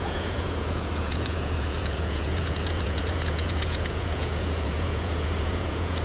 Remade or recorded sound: remade